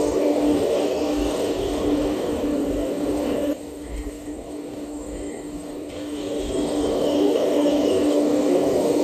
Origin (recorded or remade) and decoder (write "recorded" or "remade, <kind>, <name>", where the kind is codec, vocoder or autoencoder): remade, codec, DAC